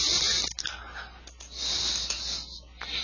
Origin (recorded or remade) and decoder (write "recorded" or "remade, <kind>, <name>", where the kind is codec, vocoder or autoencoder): recorded